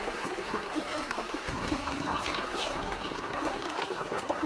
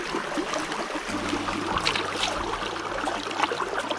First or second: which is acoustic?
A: second